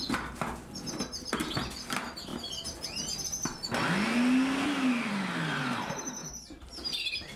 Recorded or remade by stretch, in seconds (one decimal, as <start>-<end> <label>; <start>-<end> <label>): 0.0-6.2 recorded; 6.2-7.4 remade